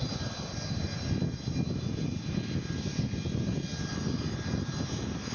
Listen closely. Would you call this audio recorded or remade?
recorded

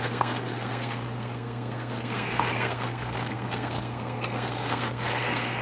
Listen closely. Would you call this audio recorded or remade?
remade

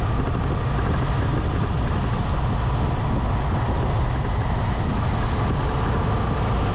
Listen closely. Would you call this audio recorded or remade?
recorded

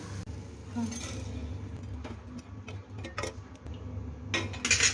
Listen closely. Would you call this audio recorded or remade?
recorded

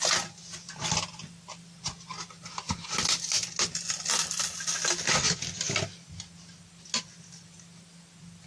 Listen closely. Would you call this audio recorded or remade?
recorded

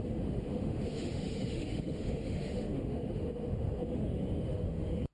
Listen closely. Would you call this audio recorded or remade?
remade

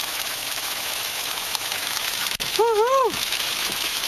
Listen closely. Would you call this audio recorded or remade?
remade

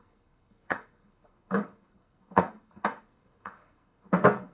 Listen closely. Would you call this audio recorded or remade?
remade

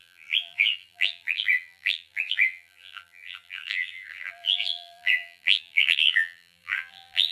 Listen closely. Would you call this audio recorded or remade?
remade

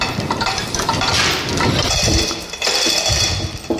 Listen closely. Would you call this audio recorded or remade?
remade